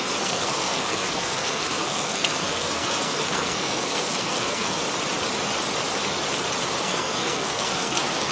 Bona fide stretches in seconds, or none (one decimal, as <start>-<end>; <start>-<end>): 4.8-6.8

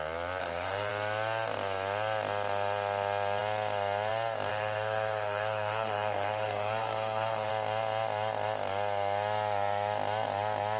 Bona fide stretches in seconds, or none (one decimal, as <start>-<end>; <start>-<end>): 0.0-0.4; 0.9-4.5; 7.5-10.8

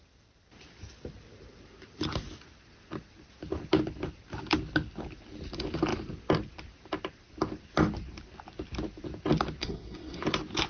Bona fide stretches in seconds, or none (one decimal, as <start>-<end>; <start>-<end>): 0.0-9.6; 10.2-10.7

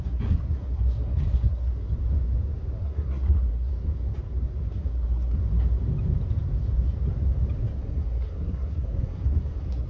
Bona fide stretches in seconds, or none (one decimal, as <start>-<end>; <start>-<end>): 1.7-2.8; 3.7-4.7; 5.4-7.8

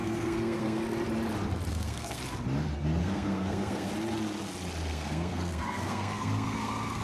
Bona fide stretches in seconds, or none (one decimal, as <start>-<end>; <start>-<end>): 0.8-1.7; 2.2-3.0; 3.9-4.9